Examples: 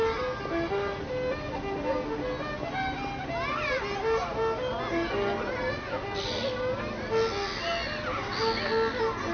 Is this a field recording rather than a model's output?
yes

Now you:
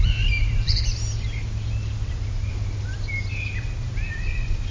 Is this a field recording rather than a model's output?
yes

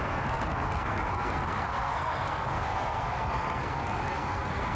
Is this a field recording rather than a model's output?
no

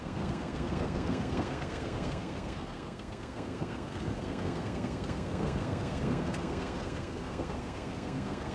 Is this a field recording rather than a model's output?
no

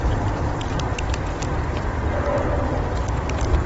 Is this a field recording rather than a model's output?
no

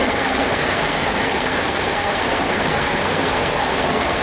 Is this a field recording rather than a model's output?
no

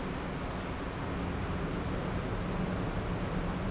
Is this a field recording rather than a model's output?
yes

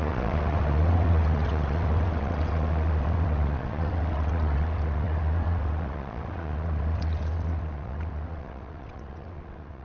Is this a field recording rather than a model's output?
no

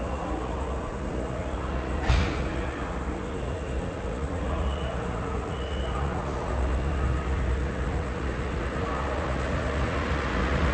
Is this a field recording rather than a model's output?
no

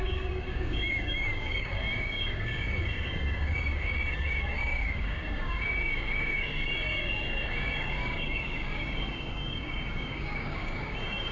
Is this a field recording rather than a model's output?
no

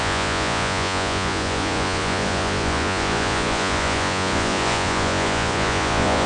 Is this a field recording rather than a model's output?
no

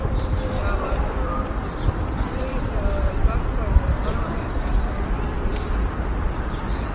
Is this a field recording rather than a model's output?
no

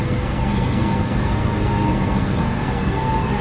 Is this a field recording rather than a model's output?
no